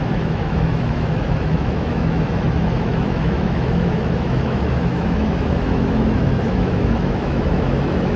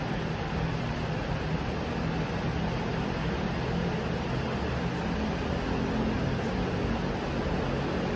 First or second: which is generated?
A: first